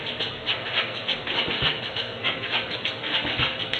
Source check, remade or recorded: remade